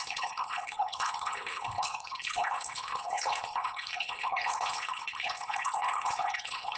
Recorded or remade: remade